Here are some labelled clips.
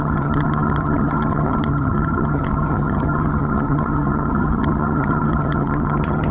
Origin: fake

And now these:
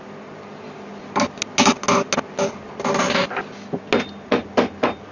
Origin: real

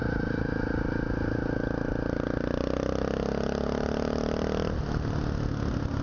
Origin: real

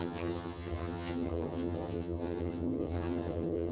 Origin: fake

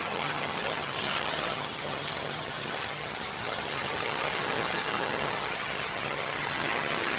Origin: fake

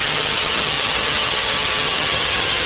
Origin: fake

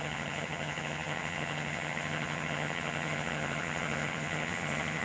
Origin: fake